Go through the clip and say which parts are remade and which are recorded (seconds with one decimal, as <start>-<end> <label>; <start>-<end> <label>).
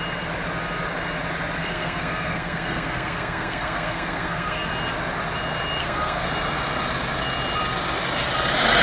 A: 0.0-1.6 recorded; 1.6-4.7 remade; 4.7-5.8 recorded; 5.8-6.3 remade; 6.3-8.8 recorded